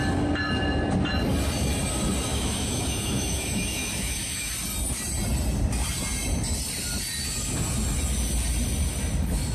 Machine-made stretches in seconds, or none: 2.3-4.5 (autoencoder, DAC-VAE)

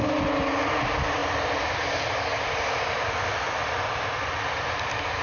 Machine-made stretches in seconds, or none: none

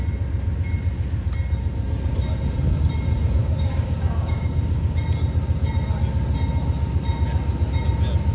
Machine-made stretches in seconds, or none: 3.4-5.0 (codec, DAC)

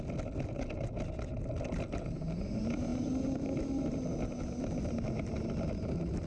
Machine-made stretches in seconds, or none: none

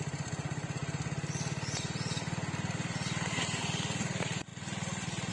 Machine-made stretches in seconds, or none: 0.0-0.8 (vocoder, BigVGAN v2); 4.0-4.5

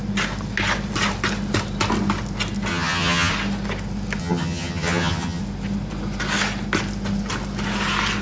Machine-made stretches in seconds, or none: 2.7-3.3 (vocoder, HiFi-GAN); 4.2-5.4

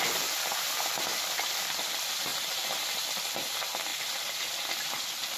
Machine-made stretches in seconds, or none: 1.1-1.8 (vocoder, BigVGAN v2); 3.9-4.6